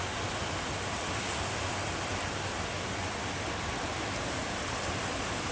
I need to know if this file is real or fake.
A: real